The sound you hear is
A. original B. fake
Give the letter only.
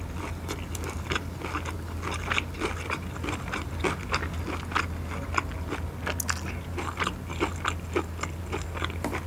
A